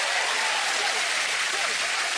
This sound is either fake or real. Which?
real